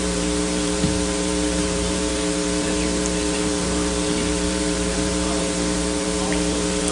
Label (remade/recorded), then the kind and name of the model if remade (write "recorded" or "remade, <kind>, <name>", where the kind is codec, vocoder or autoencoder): remade, vocoder, BigVGAN v2